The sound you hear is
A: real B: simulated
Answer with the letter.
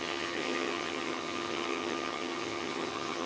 B